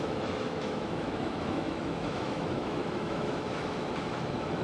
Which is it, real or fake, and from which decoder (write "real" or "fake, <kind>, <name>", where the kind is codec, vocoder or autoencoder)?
fake, autoencoder, DAC-VAE